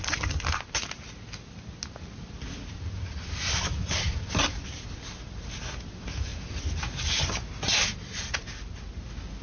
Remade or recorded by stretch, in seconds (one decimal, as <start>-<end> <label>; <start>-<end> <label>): 0.0-9.4 recorded